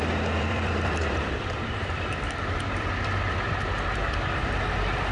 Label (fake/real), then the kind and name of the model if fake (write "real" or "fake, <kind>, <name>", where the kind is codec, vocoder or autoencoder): fake, vocoder, BigVGAN v2